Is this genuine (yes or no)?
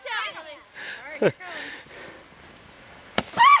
no